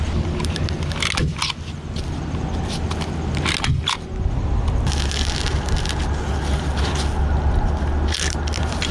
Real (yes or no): yes